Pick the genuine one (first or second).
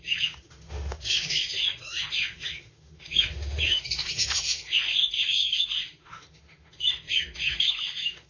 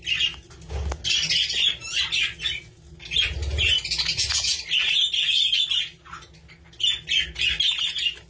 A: second